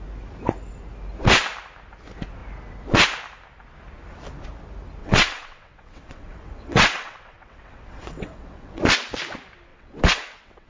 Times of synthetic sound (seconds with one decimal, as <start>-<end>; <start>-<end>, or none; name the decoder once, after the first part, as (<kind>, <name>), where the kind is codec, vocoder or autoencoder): 5.0-8.8 (vocoder, WaveNeXt); 9.7-10.7